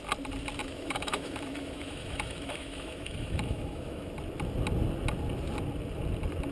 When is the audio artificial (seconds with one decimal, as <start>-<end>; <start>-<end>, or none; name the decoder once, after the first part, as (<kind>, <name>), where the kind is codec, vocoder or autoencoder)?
0.6-4.1 (autoencoder, DAC-VAE)